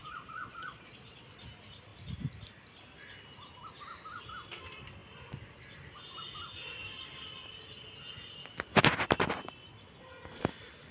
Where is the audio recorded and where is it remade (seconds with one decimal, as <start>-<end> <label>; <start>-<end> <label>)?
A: 0.0-1.4 remade; 1.4-10.9 recorded